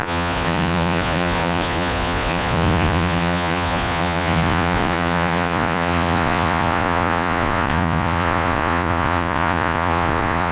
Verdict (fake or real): fake